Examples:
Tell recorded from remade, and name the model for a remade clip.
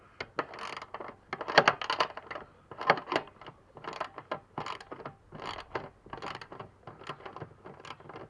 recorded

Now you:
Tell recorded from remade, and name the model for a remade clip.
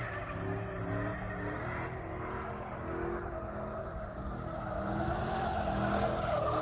recorded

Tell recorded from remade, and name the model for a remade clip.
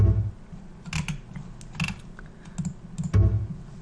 recorded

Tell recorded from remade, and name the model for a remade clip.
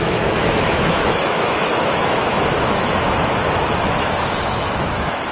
remade, autoencoder, DAC-VAE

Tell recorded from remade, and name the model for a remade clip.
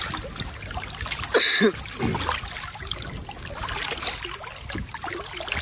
recorded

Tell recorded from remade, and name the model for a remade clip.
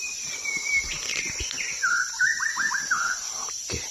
recorded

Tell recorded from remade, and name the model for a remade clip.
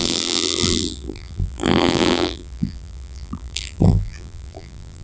remade, vocoder, BigVGAN v2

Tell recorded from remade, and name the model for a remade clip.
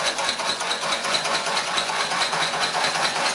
remade, vocoder, Vocos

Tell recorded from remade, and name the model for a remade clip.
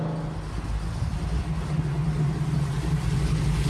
recorded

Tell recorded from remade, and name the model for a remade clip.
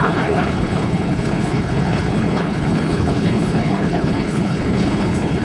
remade, codec, HILCodec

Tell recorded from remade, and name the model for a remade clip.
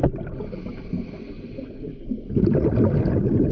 recorded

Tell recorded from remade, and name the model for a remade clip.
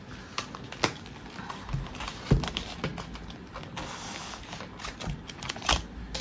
recorded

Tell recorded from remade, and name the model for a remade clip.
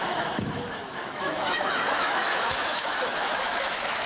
remade, autoencoder, DAC-VAE